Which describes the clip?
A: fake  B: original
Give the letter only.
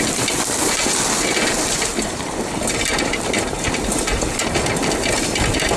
B